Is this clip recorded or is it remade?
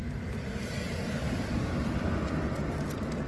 recorded